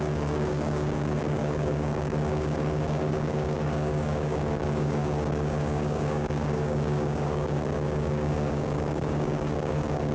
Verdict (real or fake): fake